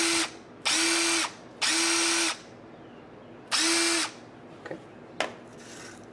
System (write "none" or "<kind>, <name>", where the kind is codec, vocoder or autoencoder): none